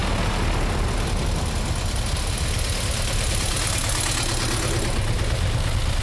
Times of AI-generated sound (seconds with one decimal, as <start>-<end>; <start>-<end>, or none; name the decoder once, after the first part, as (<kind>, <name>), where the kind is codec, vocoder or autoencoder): none